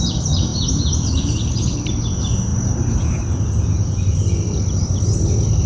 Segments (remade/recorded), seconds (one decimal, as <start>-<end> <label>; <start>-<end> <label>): 0.0-5.7 recorded